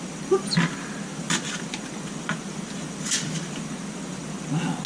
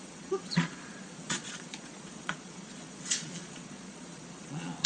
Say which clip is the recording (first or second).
first